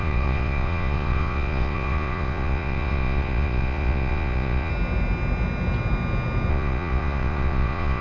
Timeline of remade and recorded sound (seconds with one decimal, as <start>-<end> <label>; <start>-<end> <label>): 0.0-4.7 remade; 4.7-6.5 recorded; 6.5-8.0 remade